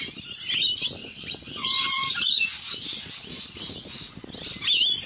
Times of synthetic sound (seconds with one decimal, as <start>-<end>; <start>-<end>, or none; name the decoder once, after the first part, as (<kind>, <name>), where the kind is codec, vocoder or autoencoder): 1.0-4.1 (vocoder, Vocos)